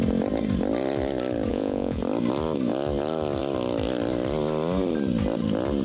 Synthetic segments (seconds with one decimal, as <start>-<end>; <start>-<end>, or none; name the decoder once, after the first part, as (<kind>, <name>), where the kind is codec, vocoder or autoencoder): 1.5-2.0 (vocoder, Vocos)